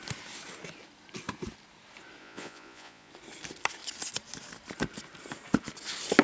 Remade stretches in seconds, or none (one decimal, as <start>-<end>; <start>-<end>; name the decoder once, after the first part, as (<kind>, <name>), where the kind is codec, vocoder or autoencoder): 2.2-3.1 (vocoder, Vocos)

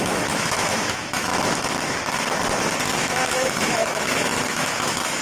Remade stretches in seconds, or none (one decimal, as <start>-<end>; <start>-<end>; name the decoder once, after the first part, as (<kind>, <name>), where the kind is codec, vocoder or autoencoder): 0.0-1.3 (autoencoder, DAC-VAE); 3.0-5.2

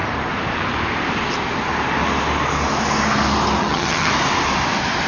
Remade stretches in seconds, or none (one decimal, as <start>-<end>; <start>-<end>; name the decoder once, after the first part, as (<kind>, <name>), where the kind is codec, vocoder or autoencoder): 3.6-4.1 (vocoder, HiFi-GAN)

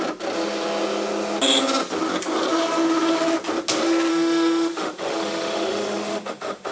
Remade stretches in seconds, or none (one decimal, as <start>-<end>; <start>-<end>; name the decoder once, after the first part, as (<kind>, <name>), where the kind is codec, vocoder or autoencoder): 4.1-6.7 (autoencoder, DAC-VAE)

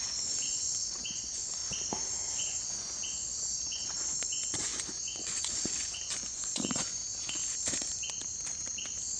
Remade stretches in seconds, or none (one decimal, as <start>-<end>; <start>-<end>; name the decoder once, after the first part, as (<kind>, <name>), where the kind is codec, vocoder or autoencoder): 0.0-1.6 (vocoder, Vocos); 2.3-7.0